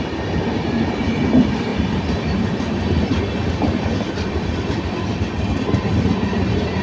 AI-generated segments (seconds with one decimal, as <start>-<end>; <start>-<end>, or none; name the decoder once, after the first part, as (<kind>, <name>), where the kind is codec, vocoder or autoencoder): 1.7-5.8 (vocoder, BigVGAN v2)